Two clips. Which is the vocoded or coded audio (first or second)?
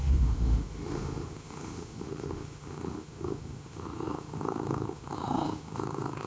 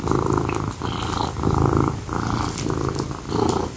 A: first